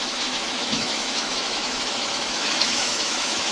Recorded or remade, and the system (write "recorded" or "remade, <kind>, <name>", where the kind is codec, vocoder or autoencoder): remade, autoencoder, DAC-VAE